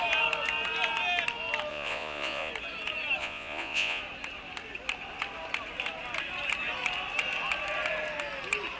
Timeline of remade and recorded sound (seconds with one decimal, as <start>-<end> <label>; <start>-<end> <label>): 0.0-1.7 recorded; 1.7-2.5 remade; 2.5-3.2 recorded; 3.2-4.0 remade; 4.0-8.8 recorded